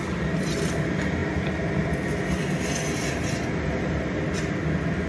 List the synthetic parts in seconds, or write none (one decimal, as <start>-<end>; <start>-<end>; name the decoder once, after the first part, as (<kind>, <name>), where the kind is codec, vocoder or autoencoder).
none